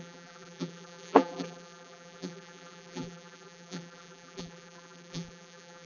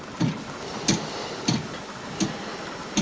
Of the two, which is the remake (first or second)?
first